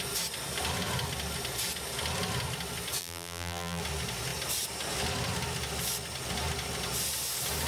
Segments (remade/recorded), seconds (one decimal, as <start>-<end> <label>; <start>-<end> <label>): 0.0-3.0 recorded; 3.0-3.8 remade; 3.8-7.7 recorded